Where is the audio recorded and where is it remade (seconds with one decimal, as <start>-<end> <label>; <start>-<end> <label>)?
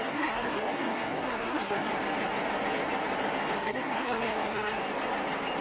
0.0-1.9 remade; 1.9-3.6 recorded; 3.6-4.8 remade; 4.8-5.6 recorded